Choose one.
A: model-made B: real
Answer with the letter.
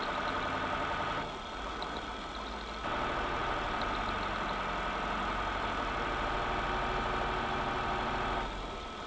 B